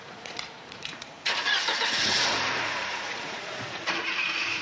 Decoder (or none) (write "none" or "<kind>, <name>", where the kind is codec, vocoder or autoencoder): vocoder, Vocos